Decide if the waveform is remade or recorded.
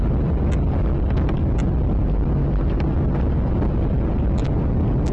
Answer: recorded